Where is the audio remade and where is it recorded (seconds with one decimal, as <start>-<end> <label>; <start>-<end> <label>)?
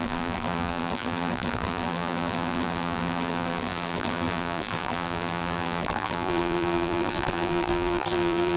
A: 0.0-8.6 remade